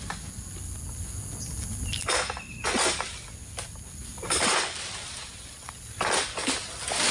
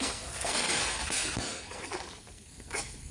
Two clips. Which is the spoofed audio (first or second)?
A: second